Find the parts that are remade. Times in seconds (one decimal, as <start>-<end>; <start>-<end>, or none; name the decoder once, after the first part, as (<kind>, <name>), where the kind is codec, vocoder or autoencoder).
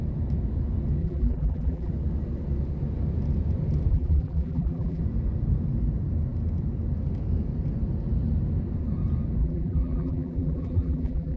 1.0-1.9 (vocoder, BigVGAN v2); 3.9-5.0; 9.4-11.4